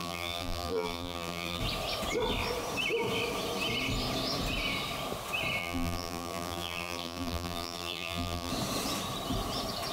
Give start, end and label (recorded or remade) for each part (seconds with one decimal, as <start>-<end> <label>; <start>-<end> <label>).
0.0-1.6 remade; 1.6-5.6 recorded; 5.6-8.5 remade; 8.5-9.9 recorded